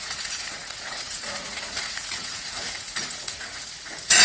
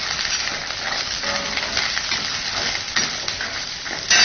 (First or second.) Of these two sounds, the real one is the second